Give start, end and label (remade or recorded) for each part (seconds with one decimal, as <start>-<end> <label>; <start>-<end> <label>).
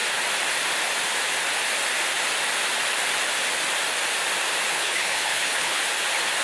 0.0-4.7 recorded; 4.7-5.8 remade; 5.8-6.4 recorded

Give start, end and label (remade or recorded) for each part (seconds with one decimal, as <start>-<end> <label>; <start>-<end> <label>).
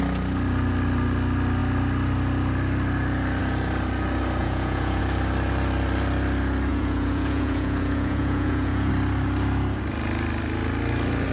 0.0-4.4 recorded; 4.4-5.0 remade; 5.0-6.7 recorded; 6.7-8.9 remade; 8.9-11.3 recorded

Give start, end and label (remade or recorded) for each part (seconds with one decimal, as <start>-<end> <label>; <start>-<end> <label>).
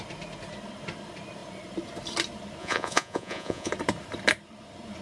0.0-2.6 recorded; 2.6-3.7 remade; 3.7-5.0 recorded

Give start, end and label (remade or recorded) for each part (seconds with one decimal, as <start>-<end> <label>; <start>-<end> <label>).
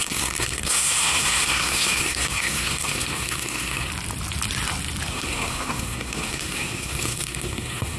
0.0-3.9 remade; 3.9-5.1 recorded; 5.1-8.0 remade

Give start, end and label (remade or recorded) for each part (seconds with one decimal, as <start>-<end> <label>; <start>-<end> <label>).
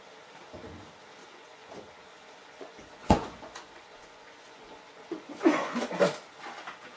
0.0-1.2 recorded; 1.2-1.7 remade; 1.7-2.1 recorded; 2.1-6.0 remade; 6.0-7.0 recorded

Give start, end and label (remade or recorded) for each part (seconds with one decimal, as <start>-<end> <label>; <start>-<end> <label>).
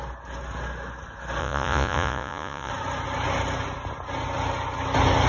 0.0-1.4 recorded; 1.4-2.7 remade; 2.7-5.3 recorded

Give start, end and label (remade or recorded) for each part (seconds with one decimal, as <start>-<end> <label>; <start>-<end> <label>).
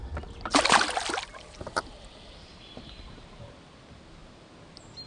0.0-5.1 recorded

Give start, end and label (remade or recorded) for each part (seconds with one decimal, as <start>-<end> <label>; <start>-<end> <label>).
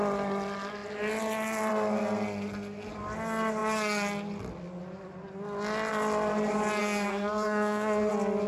0.0-6.8 recorded; 6.8-8.1 remade; 8.1-8.5 recorded